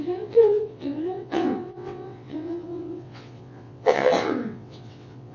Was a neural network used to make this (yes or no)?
yes